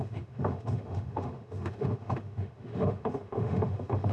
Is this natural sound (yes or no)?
no